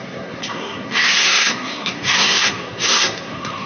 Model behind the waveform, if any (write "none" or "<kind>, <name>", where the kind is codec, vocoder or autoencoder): codec, SNAC